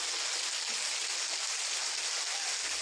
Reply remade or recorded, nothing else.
recorded